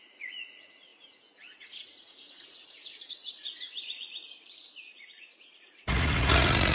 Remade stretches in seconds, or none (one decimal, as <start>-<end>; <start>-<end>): 0.0-6.7

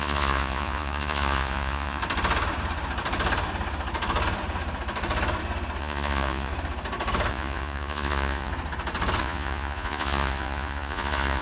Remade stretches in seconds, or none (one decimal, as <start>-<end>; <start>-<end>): 0.0-2.0; 5.8-6.5; 7.3-8.5; 9.2-11.4

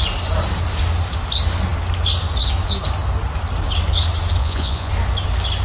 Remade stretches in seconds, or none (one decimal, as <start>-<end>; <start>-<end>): 4.4-4.9

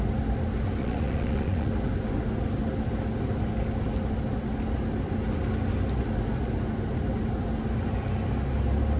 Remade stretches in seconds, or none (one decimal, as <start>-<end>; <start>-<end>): 0.8-1.7

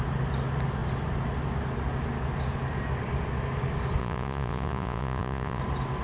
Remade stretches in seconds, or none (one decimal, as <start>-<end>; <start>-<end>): 4.0-5.6

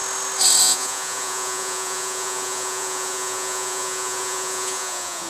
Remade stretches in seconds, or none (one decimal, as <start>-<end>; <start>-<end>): 0.6-5.3